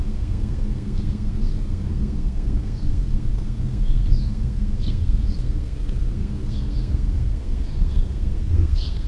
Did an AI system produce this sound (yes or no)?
yes